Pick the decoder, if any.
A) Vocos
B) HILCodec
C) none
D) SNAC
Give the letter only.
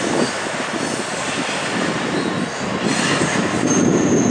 C